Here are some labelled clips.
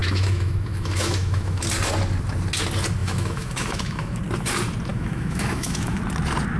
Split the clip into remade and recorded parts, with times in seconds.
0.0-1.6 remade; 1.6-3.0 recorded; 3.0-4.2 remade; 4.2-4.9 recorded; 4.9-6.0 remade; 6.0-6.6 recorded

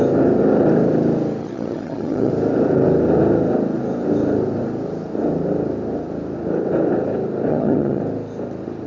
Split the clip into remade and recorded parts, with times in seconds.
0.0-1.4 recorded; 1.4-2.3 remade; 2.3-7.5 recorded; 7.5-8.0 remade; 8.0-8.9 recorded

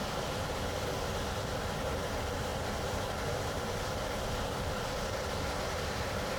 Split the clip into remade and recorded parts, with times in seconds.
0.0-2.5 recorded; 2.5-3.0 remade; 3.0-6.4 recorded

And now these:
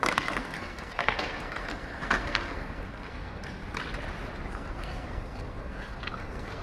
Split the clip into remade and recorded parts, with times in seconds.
0.0-3.6 remade; 3.6-4.5 recorded; 4.5-6.6 remade

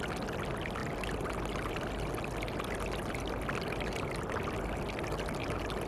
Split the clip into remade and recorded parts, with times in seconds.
0.0-5.9 recorded